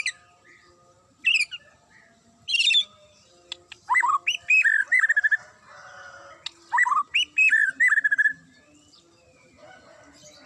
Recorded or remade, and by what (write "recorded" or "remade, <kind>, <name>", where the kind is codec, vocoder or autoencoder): recorded